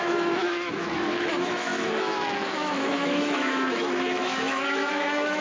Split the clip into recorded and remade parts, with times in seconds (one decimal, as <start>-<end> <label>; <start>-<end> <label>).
0.0-5.4 remade